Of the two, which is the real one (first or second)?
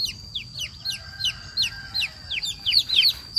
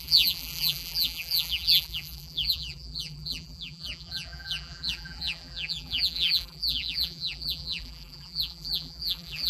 first